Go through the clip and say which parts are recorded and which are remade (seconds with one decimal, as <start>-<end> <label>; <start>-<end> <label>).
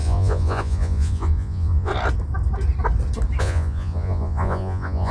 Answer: 0.0-1.9 remade; 1.9-3.4 recorded; 3.4-5.1 remade